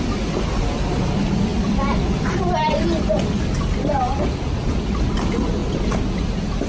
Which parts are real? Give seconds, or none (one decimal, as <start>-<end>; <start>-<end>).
0.0-6.7